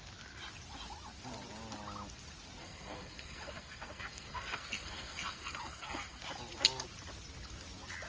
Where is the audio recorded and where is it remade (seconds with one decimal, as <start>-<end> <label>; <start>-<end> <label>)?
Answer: 0.0-2.6 recorded; 2.6-6.2 remade; 6.2-8.1 recorded